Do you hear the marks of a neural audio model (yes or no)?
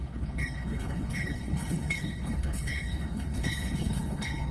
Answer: yes